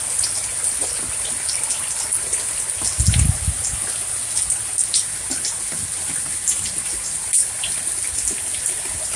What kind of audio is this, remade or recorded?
recorded